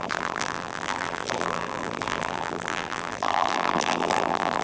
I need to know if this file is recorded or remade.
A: remade